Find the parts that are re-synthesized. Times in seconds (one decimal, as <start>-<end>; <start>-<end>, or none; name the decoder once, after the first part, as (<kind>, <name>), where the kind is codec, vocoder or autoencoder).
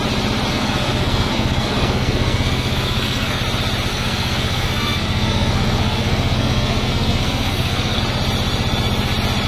0.5-3.4 (codec, SNAC); 3.9-8.0